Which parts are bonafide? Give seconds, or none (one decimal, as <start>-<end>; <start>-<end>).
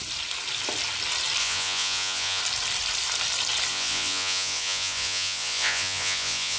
0.0-1.4; 2.4-3.7